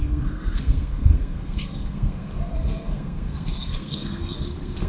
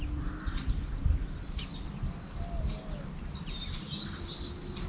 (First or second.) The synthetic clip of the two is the first